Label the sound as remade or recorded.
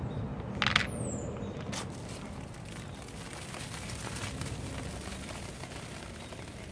recorded